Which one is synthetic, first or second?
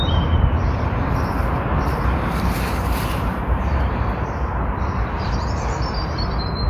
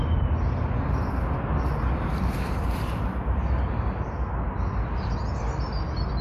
first